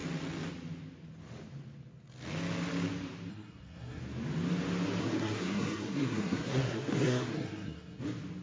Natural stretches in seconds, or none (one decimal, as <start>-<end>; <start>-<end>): 0.0-3.3; 4.0-5.0; 8.0-8.4

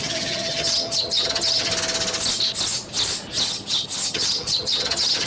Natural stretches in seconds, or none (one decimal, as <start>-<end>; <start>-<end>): 1.7-3.4